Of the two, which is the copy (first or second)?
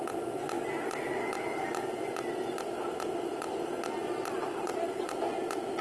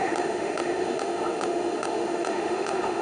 second